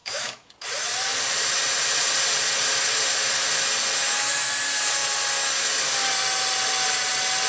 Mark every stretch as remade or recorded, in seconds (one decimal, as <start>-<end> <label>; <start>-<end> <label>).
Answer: 0.0-0.5 remade; 0.5-7.5 recorded